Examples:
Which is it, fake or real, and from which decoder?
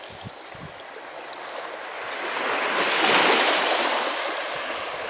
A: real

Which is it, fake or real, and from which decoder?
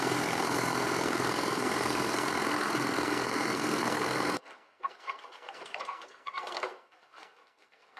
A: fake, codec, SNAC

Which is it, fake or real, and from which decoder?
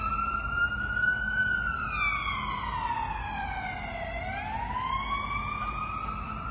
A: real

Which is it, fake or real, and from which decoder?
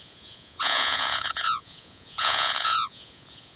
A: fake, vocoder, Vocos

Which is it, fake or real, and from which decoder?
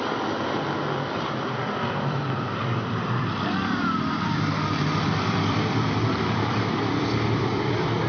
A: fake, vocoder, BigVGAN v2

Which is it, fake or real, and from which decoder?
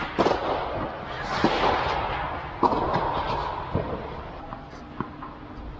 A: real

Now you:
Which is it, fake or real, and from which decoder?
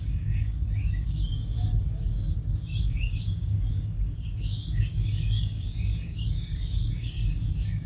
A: fake, codec, DAC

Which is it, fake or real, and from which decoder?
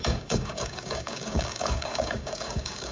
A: fake, codec, DAC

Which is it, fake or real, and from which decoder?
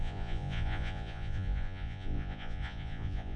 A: fake, vocoder, Vocos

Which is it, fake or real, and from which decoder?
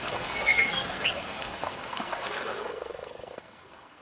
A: fake, codec, SNAC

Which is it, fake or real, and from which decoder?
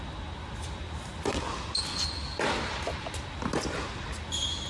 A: real